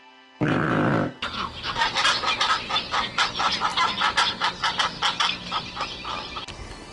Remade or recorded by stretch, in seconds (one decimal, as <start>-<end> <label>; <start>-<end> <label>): 0.0-6.9 recorded